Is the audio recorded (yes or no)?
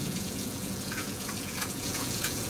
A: no